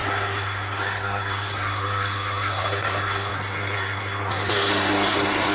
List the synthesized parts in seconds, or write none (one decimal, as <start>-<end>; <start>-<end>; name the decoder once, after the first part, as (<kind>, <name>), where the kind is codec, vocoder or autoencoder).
0.0-5.5 (codec, SNAC)